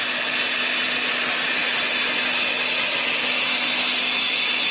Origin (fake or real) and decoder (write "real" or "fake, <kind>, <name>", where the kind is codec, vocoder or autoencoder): real